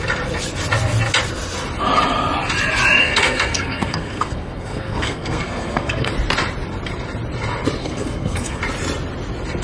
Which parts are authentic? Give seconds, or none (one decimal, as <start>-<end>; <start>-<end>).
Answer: 0.0-3.0; 6.1-7.8; 8.6-9.6